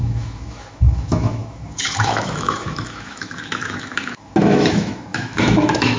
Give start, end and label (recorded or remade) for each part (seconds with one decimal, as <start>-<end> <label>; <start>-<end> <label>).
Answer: 0.0-6.0 remade